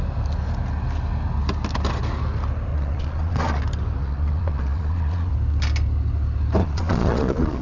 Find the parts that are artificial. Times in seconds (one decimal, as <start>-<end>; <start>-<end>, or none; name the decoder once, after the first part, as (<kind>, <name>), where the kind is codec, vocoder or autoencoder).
2.7-3.6 (vocoder, Vocos); 4.0-5.3; 6.6-7.6